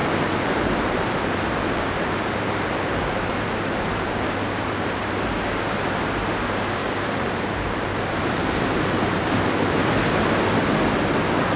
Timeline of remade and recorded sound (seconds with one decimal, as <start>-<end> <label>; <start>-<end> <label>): 0.0-5.0 remade; 5.0-6.8 recorded; 6.8-9.8 remade; 9.8-11.6 recorded